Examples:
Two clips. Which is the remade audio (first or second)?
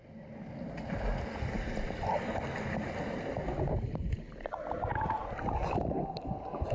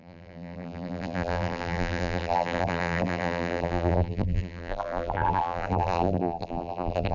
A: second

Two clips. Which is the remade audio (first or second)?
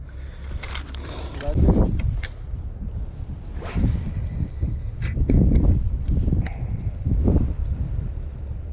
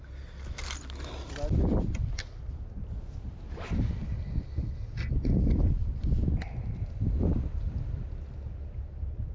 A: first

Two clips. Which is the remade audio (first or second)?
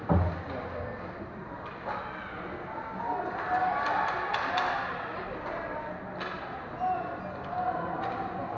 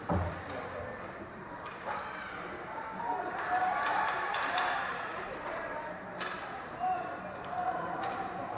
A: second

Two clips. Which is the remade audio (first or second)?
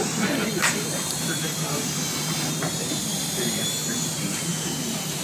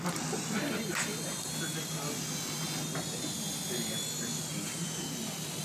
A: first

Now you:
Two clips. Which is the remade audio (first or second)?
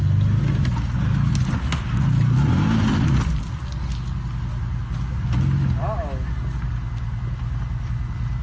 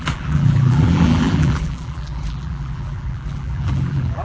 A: second